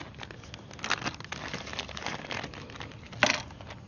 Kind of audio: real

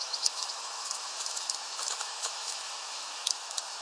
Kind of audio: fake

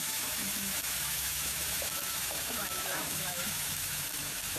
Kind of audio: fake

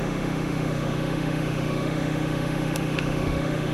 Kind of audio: fake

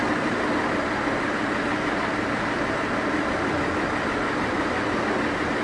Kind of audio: real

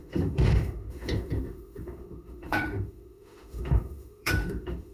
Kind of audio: fake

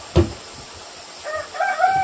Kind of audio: real